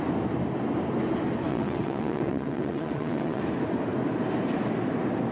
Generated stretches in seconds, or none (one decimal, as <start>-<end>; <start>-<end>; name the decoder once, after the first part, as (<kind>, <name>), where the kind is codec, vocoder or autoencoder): 1.5-3.4 (vocoder, WaveNeXt)